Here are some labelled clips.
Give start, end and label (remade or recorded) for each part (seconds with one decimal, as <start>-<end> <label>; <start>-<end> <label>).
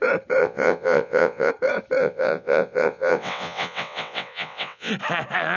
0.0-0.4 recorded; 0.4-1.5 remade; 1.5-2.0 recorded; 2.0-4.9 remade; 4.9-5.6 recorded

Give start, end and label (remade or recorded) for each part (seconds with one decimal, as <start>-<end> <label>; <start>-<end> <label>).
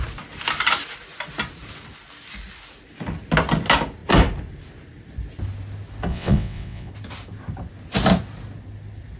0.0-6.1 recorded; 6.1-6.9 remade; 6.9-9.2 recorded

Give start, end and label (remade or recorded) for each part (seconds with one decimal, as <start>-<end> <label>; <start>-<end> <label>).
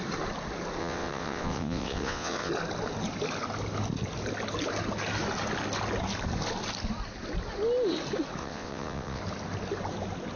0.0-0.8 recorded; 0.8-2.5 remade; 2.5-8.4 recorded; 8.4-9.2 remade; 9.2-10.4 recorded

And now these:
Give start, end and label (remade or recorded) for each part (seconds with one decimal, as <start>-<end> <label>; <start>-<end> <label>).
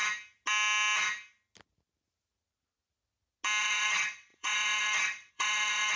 0.0-3.6 recorded; 3.6-6.0 remade